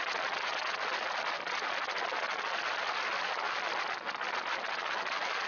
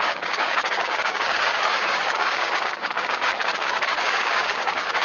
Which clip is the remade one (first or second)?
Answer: second